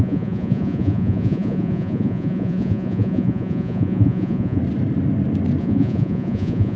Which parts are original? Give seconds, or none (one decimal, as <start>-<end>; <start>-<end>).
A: 4.6-5.6